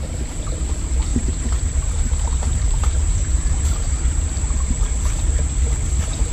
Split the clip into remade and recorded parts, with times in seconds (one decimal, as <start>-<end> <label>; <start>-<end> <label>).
0.0-1.1 recorded; 1.1-4.9 remade; 4.9-6.3 recorded